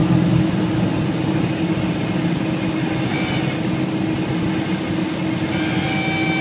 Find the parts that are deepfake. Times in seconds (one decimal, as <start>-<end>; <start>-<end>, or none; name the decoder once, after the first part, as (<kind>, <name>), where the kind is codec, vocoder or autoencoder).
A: none